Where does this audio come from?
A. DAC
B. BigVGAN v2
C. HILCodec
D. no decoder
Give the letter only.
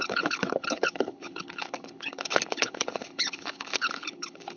C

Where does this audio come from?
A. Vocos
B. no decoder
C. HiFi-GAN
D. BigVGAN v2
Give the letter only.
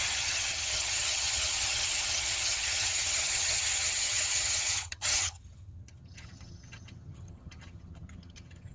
C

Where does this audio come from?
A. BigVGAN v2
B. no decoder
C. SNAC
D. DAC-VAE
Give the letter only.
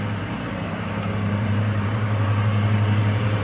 A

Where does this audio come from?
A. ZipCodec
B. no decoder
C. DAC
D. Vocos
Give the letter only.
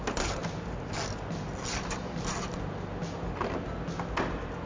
B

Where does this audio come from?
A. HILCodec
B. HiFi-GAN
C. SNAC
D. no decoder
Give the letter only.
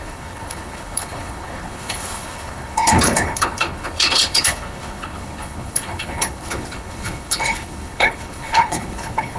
A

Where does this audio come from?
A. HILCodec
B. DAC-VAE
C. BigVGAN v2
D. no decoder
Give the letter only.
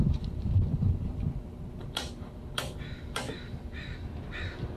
C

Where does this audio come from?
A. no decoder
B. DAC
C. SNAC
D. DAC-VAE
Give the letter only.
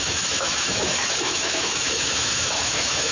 D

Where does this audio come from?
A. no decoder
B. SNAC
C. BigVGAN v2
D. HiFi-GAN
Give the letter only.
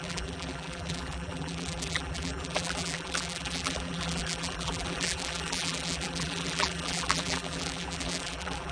C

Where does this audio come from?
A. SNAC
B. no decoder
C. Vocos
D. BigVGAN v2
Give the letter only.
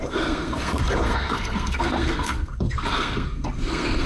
A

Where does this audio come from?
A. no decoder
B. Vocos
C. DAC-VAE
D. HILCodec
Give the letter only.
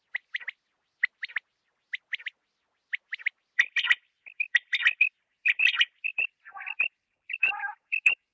A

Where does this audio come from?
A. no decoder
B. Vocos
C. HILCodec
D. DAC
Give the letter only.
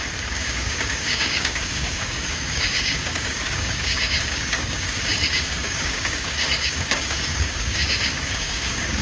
D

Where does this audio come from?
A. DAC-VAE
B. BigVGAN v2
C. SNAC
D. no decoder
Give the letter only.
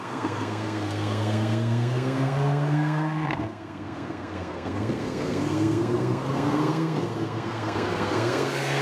C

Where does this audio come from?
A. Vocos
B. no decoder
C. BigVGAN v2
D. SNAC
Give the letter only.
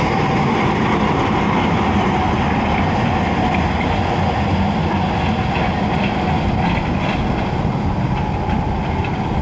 B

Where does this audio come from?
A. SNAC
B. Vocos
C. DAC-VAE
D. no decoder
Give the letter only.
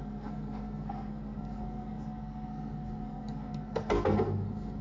A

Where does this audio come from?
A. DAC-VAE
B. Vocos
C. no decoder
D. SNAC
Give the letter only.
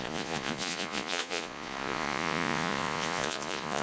B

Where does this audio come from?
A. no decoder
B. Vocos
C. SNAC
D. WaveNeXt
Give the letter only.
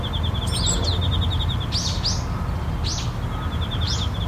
A